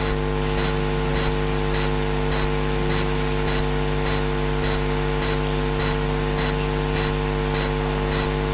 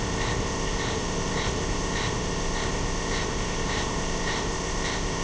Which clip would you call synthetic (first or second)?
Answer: second